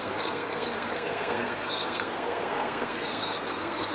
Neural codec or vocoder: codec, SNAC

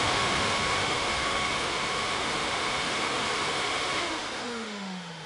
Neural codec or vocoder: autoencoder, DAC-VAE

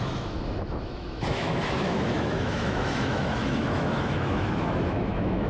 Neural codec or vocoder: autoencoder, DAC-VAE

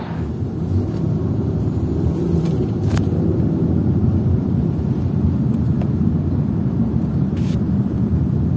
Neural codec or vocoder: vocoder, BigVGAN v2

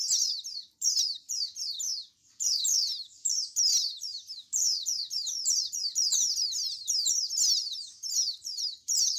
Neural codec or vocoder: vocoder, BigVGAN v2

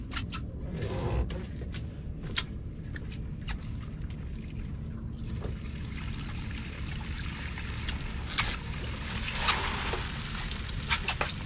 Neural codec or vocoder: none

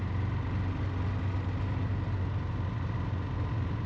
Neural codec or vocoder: none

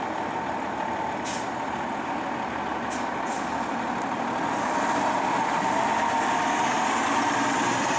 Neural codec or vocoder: none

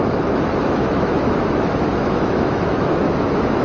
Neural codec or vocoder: autoencoder, DAC-VAE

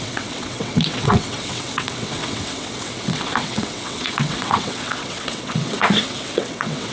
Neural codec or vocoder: vocoder, WaveNeXt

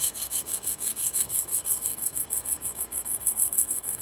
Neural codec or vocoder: codec, SNAC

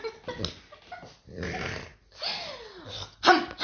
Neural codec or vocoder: none